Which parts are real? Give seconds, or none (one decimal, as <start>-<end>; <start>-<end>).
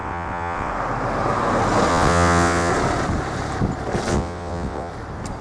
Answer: 0.7-1.9; 2.7-4.1; 4.9-5.4